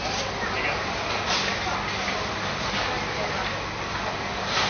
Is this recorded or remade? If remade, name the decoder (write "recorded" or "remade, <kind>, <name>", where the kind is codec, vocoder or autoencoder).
recorded